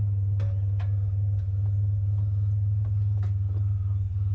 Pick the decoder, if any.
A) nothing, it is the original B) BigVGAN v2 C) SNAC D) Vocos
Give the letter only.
A